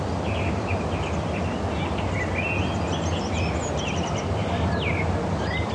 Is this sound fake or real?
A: real